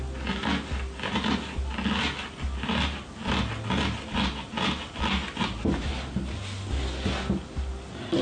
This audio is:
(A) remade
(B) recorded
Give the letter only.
B